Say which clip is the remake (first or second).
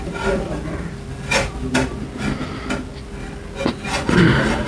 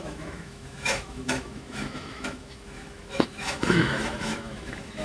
second